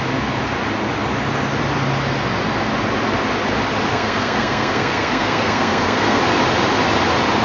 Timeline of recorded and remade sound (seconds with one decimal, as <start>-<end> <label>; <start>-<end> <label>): 0.0-3.9 recorded; 3.9-6.2 remade; 6.2-7.4 recorded